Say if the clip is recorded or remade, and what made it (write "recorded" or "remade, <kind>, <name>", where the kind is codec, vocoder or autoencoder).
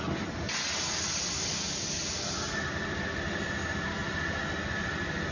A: recorded